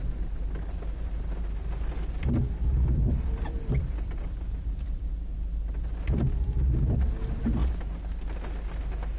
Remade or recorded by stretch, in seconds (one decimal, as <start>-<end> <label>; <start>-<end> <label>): 0.0-2.2 recorded; 2.2-5.9 remade; 5.9-9.2 recorded